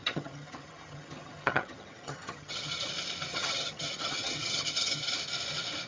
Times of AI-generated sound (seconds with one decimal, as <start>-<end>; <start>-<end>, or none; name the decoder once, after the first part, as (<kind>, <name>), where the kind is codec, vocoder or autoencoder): 0.0-2.9 (vocoder, HiFi-GAN); 3.3-5.1